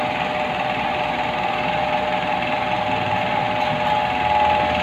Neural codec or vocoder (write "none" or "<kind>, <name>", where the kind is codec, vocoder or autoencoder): none